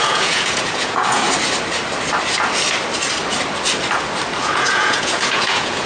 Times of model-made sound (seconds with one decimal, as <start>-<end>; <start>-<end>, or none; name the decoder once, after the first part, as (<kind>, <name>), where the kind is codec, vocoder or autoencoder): 0.0-1.2 (vocoder, Vocos); 4.4-5.9